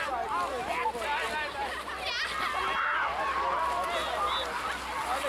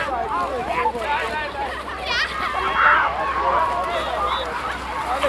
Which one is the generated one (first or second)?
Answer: second